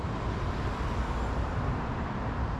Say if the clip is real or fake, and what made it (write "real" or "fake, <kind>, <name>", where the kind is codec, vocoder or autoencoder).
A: fake, vocoder, BigVGAN v2